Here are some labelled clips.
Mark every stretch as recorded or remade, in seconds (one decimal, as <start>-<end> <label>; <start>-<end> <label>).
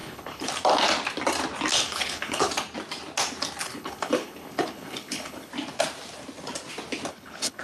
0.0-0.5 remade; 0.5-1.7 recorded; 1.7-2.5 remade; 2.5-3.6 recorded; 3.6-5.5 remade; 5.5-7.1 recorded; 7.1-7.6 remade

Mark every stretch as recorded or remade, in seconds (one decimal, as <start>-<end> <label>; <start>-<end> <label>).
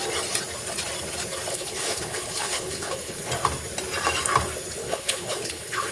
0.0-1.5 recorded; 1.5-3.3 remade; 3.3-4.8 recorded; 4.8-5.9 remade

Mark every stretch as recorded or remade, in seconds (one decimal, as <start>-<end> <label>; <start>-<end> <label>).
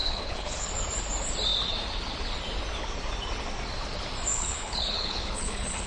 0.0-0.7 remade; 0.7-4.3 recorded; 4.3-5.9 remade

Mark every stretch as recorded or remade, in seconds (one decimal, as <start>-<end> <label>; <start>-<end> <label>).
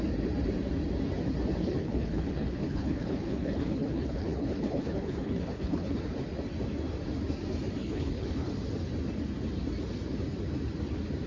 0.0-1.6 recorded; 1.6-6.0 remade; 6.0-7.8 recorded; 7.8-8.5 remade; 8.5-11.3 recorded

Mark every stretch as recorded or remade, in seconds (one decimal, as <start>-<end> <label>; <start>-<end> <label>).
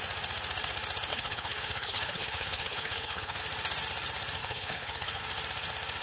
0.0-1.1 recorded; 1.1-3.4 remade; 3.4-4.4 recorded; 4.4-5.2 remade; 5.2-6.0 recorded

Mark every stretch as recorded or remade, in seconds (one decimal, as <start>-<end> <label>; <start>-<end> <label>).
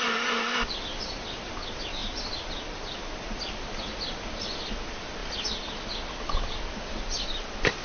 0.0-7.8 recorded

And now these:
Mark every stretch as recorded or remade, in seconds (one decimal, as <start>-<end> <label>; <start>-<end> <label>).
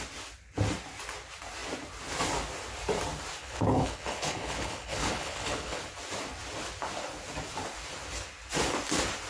0.0-3.4 recorded; 3.4-5.8 remade; 5.8-9.3 recorded